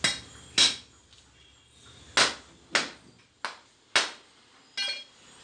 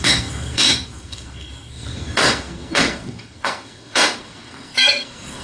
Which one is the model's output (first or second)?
second